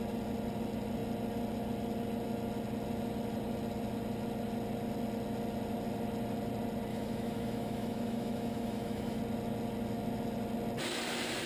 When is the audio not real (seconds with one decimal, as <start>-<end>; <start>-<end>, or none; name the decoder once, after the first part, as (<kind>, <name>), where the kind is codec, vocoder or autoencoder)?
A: 6.9-9.2 (autoencoder, DAC-VAE)